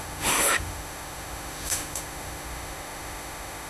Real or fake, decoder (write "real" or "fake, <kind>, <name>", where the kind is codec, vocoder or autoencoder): fake, autoencoder, DAC-VAE